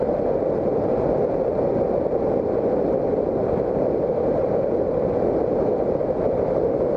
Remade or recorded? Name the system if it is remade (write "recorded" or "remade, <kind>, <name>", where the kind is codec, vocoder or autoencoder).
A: recorded